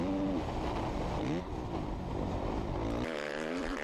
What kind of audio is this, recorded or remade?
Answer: recorded